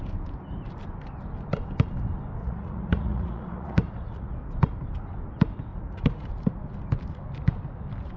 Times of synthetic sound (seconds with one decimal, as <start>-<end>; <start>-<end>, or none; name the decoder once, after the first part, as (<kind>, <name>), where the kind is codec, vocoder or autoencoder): 2.4-4.3 (vocoder, Vocos); 5.7-6.3